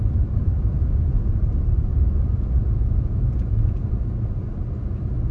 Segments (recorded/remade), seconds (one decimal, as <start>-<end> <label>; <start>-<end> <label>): 0.0-0.4 recorded; 0.4-1.4 remade; 1.4-1.9 recorded; 1.9-3.9 remade; 3.9-5.3 recorded